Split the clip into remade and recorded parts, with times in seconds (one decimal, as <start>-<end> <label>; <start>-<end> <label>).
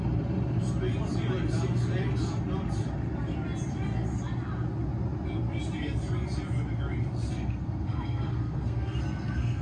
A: 0.0-7.3 recorded; 7.3-9.6 remade